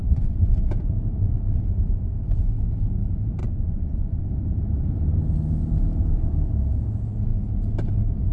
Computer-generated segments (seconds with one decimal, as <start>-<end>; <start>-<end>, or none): 0.0-0.5; 3.4-4.3